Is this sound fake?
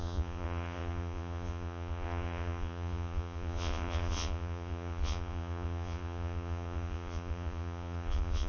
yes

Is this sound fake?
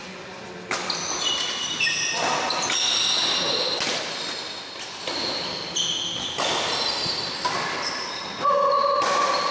no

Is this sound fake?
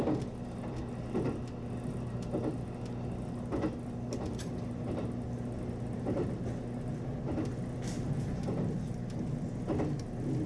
no